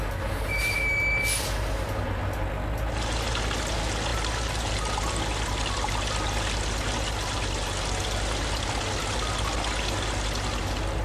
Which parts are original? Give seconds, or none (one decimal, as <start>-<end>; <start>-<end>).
0.0-11.0